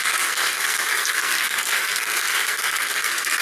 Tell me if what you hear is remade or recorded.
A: remade